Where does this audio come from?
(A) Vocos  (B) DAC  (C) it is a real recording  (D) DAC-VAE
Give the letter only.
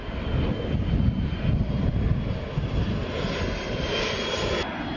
C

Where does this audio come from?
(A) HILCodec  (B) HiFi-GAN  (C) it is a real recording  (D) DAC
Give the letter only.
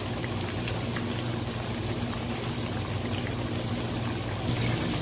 C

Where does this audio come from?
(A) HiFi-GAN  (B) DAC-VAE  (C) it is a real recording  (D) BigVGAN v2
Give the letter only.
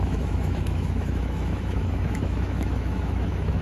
B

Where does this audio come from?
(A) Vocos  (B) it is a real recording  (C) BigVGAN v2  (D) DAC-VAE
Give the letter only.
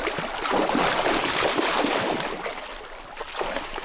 B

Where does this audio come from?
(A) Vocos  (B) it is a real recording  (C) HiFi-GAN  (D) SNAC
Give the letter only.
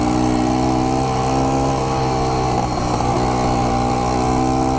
B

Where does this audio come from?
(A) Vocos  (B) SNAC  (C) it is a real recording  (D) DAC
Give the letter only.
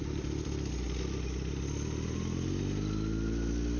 C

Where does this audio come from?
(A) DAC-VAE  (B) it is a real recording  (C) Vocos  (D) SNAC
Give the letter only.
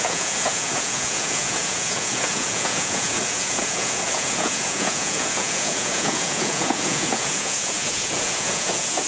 C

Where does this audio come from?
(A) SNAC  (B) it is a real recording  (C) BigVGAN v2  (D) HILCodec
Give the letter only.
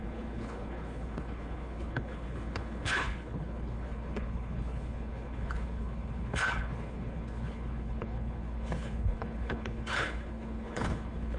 D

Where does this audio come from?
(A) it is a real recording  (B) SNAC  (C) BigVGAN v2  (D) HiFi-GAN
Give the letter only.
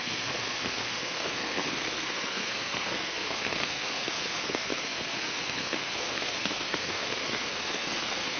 B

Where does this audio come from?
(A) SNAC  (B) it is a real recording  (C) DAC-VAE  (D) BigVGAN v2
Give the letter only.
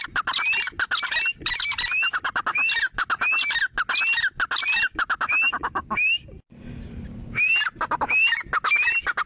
B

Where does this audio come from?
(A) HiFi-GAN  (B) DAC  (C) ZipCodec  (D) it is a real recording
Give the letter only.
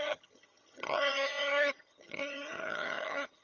A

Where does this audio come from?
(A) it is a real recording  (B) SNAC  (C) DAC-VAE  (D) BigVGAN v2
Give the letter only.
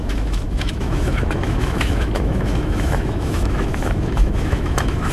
C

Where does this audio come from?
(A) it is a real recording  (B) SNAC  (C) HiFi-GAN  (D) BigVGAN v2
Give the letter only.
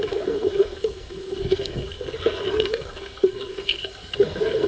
B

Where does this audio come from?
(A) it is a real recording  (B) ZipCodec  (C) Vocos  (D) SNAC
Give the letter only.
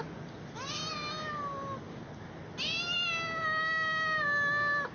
A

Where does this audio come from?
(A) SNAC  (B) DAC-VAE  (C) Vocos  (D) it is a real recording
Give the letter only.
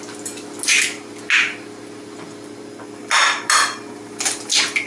D